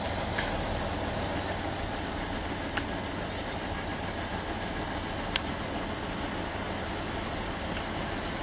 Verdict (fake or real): real